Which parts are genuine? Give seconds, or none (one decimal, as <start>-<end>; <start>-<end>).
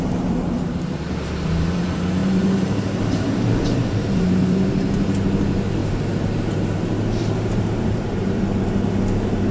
5.8-6.5